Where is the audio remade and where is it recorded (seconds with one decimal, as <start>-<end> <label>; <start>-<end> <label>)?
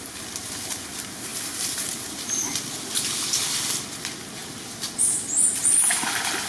0.0-6.5 recorded